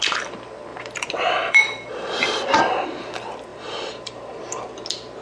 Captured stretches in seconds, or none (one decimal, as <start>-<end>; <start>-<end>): 0.0-0.7; 2.6-3.5; 4.6-5.2